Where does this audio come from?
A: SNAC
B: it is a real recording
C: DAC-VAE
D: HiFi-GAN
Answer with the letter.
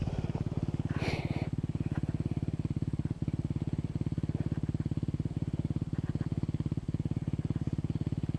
B